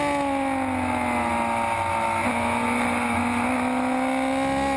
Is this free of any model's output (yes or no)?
yes